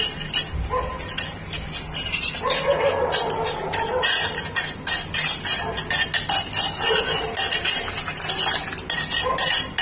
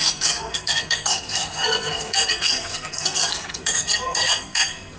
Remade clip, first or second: second